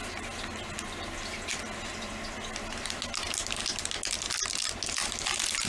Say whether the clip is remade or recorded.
recorded